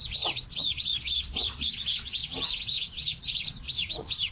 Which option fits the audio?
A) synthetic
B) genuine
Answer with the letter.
A